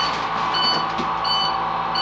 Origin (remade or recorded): recorded